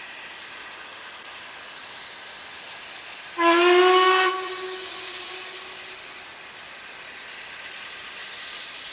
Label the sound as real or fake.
real